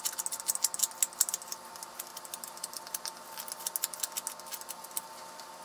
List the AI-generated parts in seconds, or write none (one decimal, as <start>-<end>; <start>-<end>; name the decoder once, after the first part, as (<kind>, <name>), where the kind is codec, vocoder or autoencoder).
none